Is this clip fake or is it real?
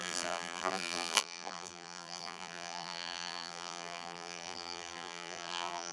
fake